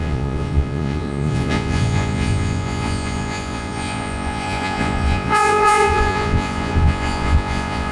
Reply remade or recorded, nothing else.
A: remade